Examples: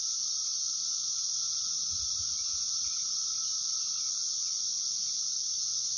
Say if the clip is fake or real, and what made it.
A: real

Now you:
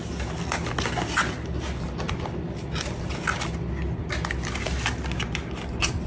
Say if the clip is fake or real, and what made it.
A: real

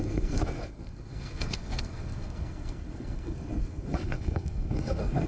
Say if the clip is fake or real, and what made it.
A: fake, codec, SNAC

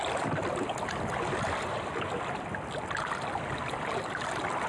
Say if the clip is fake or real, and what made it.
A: real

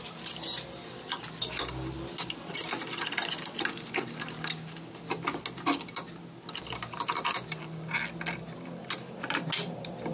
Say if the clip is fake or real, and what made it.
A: real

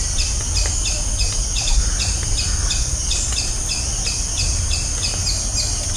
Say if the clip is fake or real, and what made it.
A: real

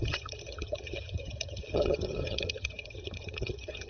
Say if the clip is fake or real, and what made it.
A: fake, vocoder, HiFi-GAN